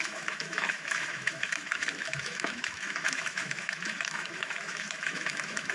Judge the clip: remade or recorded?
remade